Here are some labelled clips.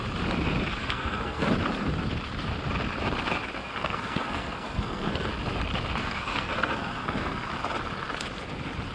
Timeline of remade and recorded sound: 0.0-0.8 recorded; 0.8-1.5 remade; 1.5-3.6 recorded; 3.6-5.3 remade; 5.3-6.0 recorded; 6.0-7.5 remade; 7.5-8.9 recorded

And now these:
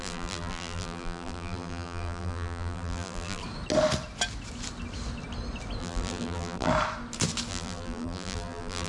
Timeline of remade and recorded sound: 0.0-3.4 remade; 3.4-5.8 recorded; 5.8-6.7 remade; 6.7-7.5 recorded; 7.5-8.9 remade

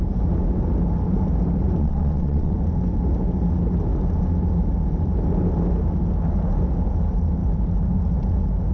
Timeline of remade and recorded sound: 0.0-1.8 recorded; 1.8-2.5 remade; 2.5-8.7 recorded

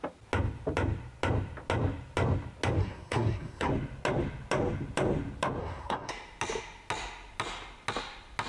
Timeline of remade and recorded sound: 0.0-2.8 recorded; 2.8-3.7 remade; 3.7-5.6 recorded; 5.6-6.1 remade; 6.1-8.5 recorded

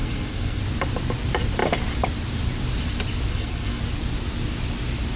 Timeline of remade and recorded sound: 0.0-0.6 remade; 0.6-3.3 recorded; 3.3-3.8 remade; 3.8-5.2 recorded

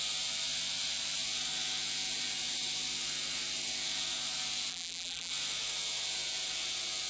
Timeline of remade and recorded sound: 0.0-4.7 recorded; 4.7-5.3 remade; 5.3-7.1 recorded